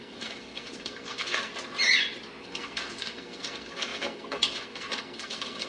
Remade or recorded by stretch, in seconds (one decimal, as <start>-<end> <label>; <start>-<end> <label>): 0.0-1.5 remade; 1.5-2.4 recorded; 2.4-5.7 remade

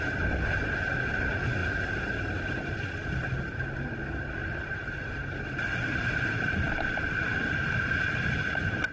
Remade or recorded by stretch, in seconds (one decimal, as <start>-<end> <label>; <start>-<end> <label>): 0.0-1.6 recorded; 1.6-2.9 remade; 2.9-4.4 recorded; 4.4-6.5 remade; 6.5-8.9 recorded

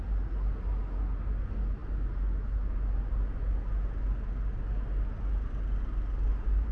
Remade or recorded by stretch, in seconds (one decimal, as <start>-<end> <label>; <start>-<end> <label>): 0.0-6.7 recorded

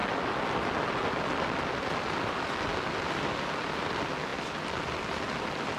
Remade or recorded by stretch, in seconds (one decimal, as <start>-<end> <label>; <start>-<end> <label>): 0.0-5.8 recorded

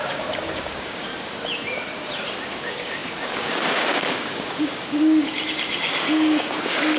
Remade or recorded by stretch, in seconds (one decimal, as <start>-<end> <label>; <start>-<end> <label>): 0.0-1.1 remade; 1.1-2.5 recorded; 2.5-7.0 remade